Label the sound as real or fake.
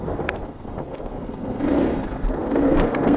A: fake